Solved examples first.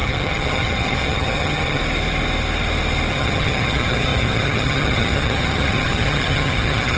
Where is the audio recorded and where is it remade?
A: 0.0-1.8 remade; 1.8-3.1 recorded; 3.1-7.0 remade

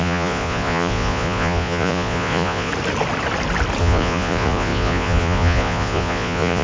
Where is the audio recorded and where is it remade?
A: 0.0-2.7 remade; 2.7-3.8 recorded; 3.8-6.6 remade

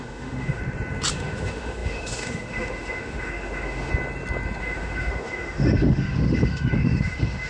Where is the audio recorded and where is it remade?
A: 0.0-0.6 remade; 0.6-1.1 recorded; 1.1-3.9 remade; 3.9-4.6 recorded; 4.6-7.5 remade

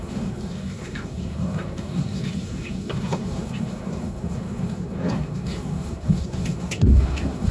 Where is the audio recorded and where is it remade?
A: 0.0-7.5 remade

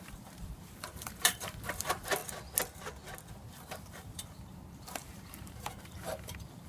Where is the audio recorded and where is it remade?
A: 0.0-2.2 remade; 2.2-3.3 recorded; 3.3-6.7 remade

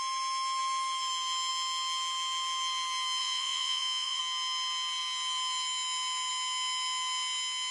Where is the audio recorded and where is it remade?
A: 0.0-3.2 recorded; 3.2-4.2 remade; 4.2-7.7 recorded

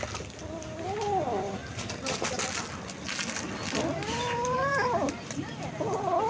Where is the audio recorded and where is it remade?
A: 0.0-4.7 recorded; 4.7-5.7 remade; 5.7-6.3 recorded

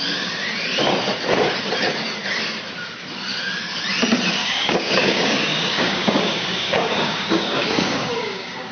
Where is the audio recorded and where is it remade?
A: 0.0-4.4 recorded; 4.4-8.7 remade